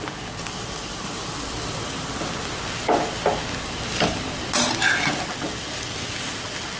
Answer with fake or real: real